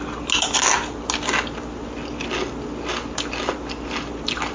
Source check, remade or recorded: recorded